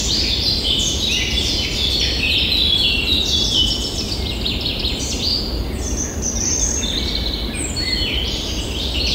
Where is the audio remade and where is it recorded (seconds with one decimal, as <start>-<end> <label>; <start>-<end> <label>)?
0.0-9.1 recorded